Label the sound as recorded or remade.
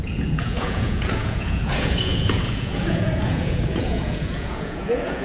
remade